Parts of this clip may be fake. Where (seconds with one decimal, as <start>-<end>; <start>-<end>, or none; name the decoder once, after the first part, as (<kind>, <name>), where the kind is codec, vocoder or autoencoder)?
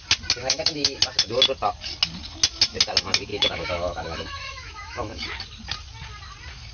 0.4-1.0 (autoencoder, DAC-VAE); 3.3-5.2